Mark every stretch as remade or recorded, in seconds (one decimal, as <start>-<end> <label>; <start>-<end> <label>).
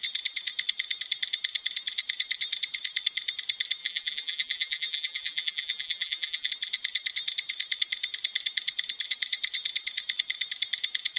0.0-3.8 recorded; 3.8-6.5 remade; 6.5-11.2 recorded